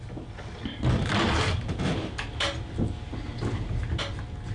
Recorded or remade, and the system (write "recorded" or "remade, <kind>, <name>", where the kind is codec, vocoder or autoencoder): recorded